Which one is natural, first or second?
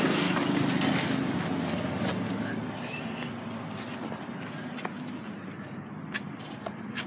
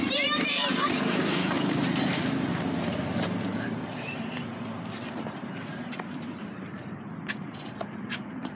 first